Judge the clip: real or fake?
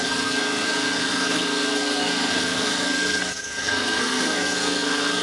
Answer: fake